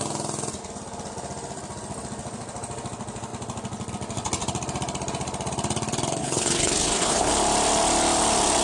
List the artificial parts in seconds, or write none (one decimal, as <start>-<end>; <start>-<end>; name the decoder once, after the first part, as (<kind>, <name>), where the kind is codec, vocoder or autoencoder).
6.2-7.3 (codec, HILCodec)